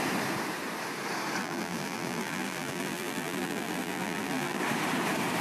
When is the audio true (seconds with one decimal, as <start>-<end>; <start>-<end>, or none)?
0.0-1.4; 4.6-5.4